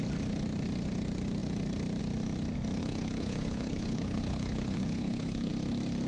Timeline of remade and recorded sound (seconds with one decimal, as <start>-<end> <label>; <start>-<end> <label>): 0.0-2.8 recorded; 2.8-5.5 remade; 5.5-6.1 recorded